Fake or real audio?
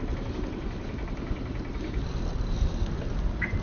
real